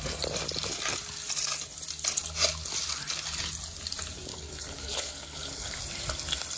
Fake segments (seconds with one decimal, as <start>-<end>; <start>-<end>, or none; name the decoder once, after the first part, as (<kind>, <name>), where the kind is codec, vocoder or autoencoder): 4.3-5.8 (codec, HILCodec)